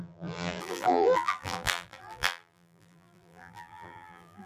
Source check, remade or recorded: remade